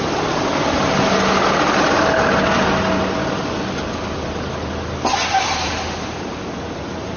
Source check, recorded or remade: recorded